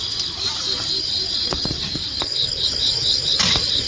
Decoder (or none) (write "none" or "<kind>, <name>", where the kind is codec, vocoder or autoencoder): none